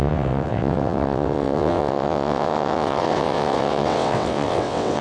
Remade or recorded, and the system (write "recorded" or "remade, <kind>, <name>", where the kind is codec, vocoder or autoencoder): remade, vocoder, WaveNeXt